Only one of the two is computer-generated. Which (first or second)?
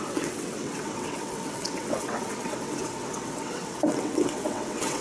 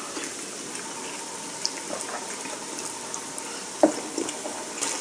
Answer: first